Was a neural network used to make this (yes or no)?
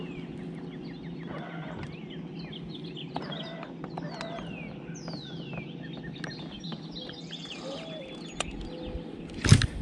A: no